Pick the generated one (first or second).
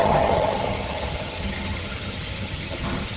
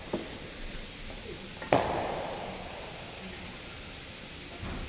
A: first